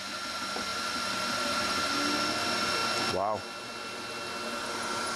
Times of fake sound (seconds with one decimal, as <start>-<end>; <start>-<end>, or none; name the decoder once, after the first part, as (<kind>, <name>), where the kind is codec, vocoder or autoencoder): none